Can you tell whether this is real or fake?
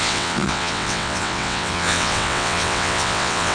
fake